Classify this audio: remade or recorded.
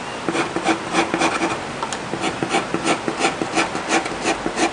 recorded